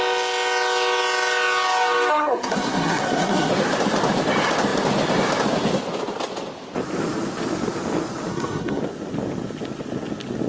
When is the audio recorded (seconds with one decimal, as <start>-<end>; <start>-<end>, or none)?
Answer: 0.0-2.1; 3.5-8.3; 8.8-10.5